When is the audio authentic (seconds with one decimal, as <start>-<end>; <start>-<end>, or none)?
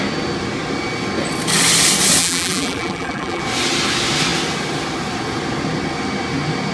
0.0-2.2; 3.4-6.7